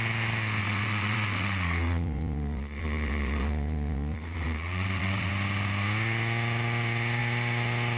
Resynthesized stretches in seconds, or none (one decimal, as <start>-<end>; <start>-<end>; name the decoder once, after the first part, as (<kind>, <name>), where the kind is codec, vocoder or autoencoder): 0.6-5.3 (vocoder, WaveNeXt)